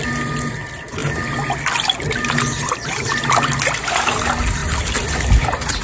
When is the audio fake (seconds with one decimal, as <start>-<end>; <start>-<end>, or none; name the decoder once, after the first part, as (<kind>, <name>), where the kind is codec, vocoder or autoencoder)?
none